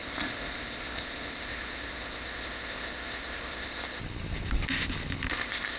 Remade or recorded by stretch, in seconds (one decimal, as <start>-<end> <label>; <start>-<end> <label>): 0.0-4.0 remade; 4.0-5.3 recorded; 5.3-5.8 remade